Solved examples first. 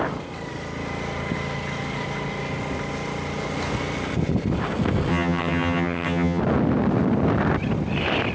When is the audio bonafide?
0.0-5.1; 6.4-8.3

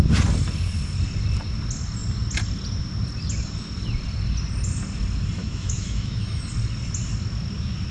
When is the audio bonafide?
0.0-5.4; 6.5-7.9

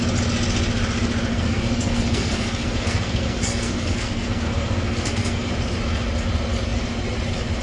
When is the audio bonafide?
0.0-1.3; 5.5-7.6

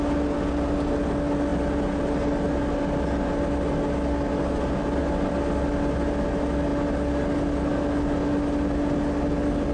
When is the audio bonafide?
0.0-9.7

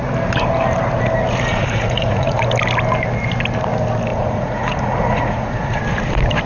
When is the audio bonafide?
0.0-1.5; 2.4-4.1; 5.8-6.5

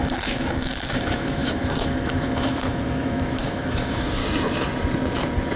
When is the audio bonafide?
4.2-5.6

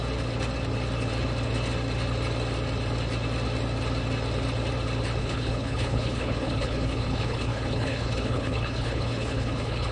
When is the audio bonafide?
0.0-5.2

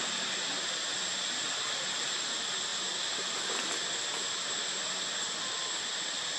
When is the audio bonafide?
0.0-6.4